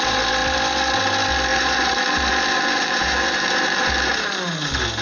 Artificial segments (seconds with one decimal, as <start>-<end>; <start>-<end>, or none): 1.5-4.5